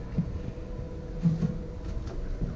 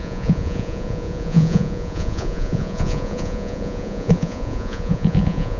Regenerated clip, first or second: second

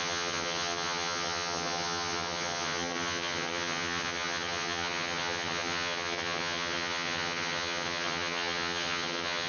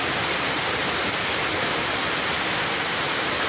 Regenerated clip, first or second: first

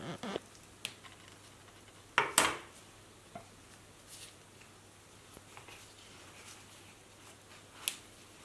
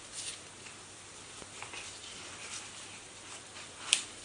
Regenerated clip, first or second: second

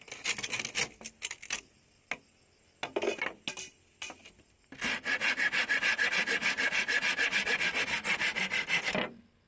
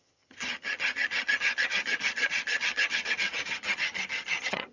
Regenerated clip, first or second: second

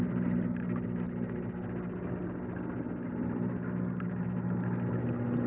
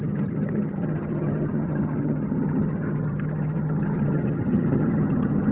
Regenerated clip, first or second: second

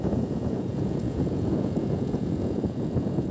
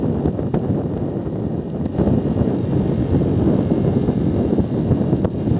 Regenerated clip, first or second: first